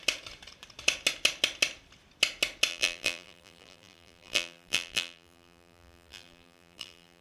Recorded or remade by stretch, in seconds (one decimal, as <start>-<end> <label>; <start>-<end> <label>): 0.0-2.7 recorded; 2.7-7.2 remade